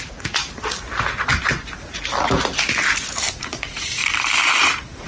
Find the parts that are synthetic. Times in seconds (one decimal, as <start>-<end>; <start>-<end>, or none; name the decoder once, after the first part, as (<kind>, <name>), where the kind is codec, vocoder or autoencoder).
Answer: 0.0-0.4 (vocoder, Vocos); 3.3-4.0; 4.6-5.1